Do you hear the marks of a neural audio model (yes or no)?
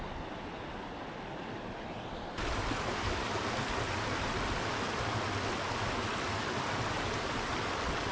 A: no